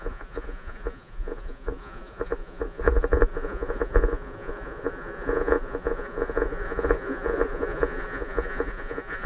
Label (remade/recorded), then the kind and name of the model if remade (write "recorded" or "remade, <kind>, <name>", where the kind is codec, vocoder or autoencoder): remade, vocoder, Vocos